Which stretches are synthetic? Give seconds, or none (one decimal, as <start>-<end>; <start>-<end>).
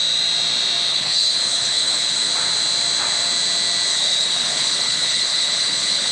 0.9-2.3; 3.9-6.1